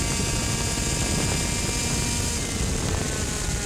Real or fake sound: real